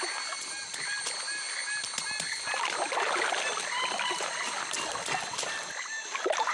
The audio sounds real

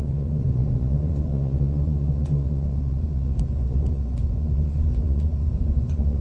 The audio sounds fake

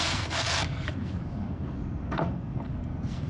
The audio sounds fake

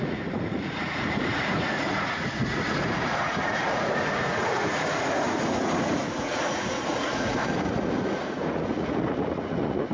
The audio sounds fake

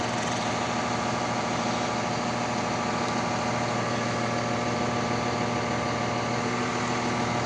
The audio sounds real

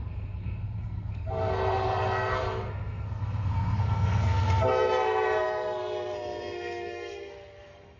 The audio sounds fake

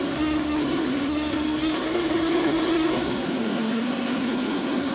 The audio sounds fake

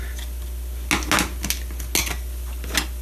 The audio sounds real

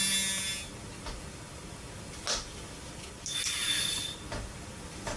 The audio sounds real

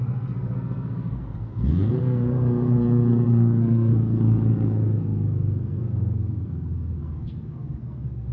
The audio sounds fake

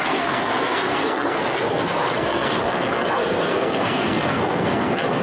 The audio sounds fake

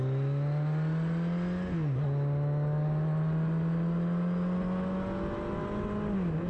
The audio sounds real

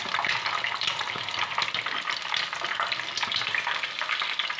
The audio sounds real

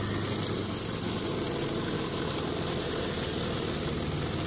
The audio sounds real